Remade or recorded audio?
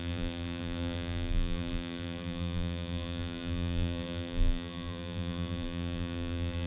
remade